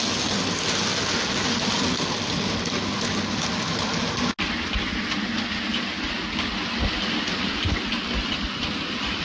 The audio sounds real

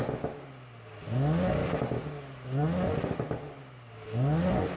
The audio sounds real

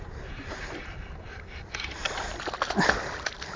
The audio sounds real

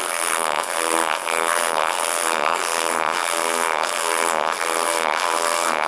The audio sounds fake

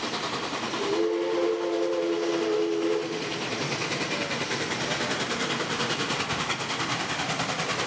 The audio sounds real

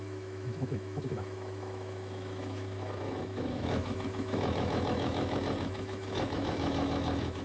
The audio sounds fake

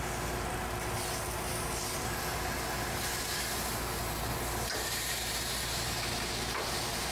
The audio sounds real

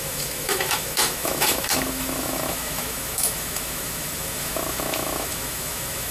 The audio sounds fake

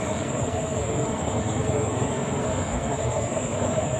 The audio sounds fake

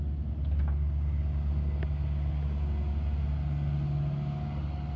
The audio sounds real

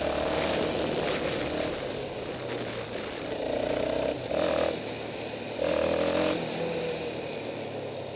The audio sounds real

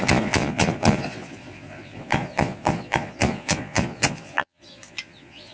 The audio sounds fake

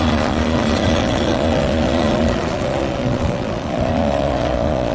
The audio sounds fake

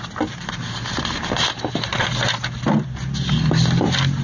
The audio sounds real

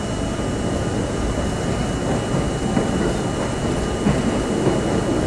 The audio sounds real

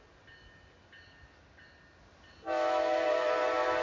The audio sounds real